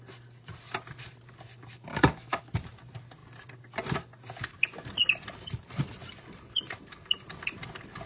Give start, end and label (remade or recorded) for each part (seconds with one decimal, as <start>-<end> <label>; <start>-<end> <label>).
0.0-1.9 recorded; 1.9-2.4 remade; 2.4-8.1 recorded

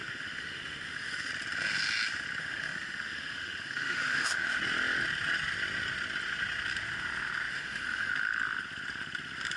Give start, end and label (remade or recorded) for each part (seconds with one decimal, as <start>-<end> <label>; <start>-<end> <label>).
0.0-1.3 remade; 1.3-2.4 recorded; 2.4-4.6 remade; 4.6-7.5 recorded; 7.5-8.1 remade; 8.1-9.6 recorded